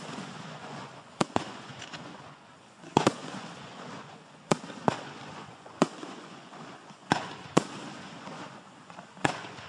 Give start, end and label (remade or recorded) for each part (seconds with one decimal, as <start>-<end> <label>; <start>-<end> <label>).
0.0-9.7 remade